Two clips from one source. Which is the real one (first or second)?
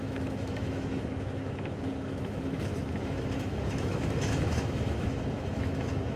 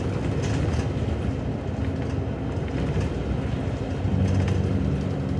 second